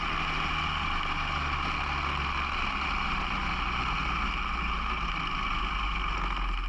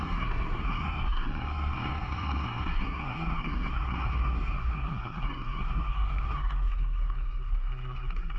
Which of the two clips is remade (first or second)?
second